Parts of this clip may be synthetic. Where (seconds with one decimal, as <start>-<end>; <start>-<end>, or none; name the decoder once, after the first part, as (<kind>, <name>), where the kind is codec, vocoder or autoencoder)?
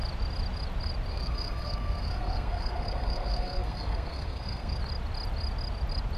1.1-4.8 (codec, SNAC)